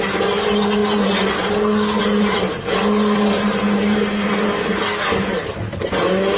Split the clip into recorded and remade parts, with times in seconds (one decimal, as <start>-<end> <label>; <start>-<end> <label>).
0.0-6.4 recorded

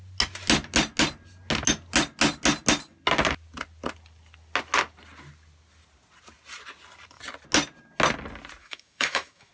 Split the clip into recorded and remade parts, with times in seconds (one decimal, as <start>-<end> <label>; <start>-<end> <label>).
0.0-8.6 recorded; 8.6-9.5 remade

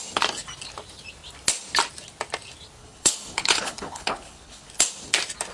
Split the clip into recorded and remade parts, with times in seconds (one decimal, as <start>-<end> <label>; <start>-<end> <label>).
0.0-2.8 recorded; 2.8-4.7 remade; 4.7-5.5 recorded

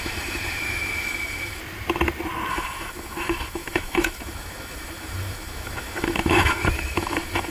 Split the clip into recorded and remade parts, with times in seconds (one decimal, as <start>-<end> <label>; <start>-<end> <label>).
0.0-1.6 remade; 1.6-2.5 recorded; 2.5-7.5 remade